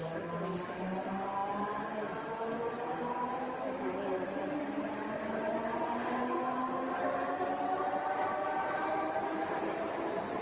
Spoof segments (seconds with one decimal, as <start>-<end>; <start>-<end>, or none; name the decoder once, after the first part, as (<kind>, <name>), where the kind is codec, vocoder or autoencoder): none